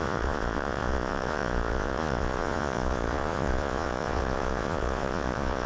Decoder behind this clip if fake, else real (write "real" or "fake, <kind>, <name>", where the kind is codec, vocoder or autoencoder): fake, vocoder, Vocos